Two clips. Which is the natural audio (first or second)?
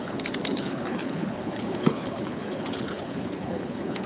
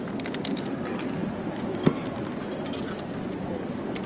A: second